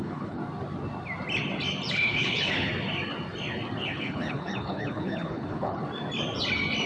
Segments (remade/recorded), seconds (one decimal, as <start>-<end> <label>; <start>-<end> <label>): 0.0-0.4 remade; 0.4-1.9 recorded; 1.9-2.7 remade; 2.7-3.8 recorded; 3.8-5.8 remade; 5.8-6.9 recorded